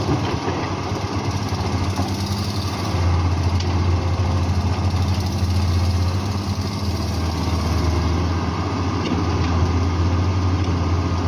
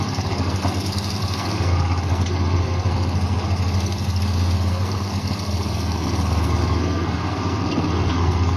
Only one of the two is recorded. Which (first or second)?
first